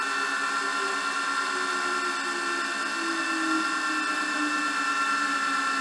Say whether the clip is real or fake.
real